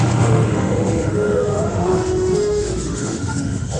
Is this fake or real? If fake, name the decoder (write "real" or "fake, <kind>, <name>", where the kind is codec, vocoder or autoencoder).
fake, autoencoder, DAC-VAE